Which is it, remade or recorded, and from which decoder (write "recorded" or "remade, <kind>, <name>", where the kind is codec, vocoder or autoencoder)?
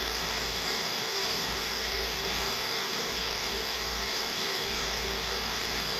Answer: remade, codec, DAC